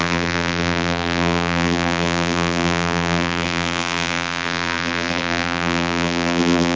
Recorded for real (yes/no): no